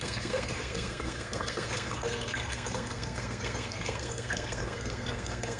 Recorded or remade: remade